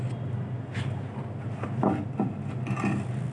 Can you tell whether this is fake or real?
real